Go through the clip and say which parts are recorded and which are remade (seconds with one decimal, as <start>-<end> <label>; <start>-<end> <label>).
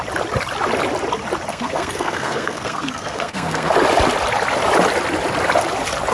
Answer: 0.0-1.5 recorded; 1.5-3.7 remade; 3.7-6.1 recorded